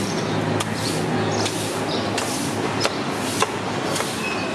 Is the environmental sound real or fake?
real